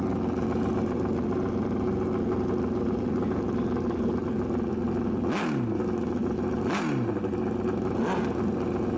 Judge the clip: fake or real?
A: real